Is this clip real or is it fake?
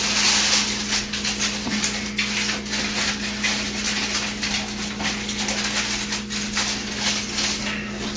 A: real